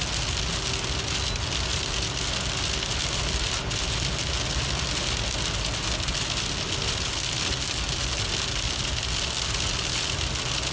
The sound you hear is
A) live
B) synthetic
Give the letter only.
A